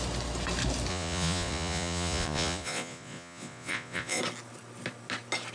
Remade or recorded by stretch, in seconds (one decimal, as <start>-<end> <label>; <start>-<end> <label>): 0.0-0.9 recorded; 0.9-4.2 remade; 4.2-5.5 recorded